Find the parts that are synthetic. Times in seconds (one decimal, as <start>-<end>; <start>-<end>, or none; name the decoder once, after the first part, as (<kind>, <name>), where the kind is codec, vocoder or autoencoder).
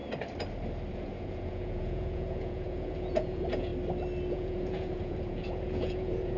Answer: 0.9-3.7 (vocoder, Vocos); 4.3-6.4